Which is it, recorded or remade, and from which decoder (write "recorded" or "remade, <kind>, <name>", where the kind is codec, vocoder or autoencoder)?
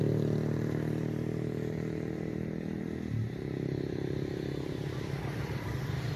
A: remade, vocoder, BigVGAN v2